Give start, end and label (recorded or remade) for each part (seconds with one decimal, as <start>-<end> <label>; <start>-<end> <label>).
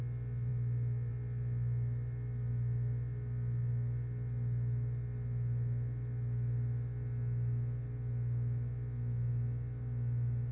0.0-10.5 recorded